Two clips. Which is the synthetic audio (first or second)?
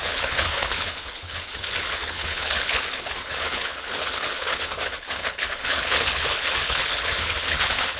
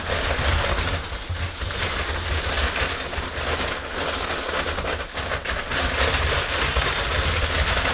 first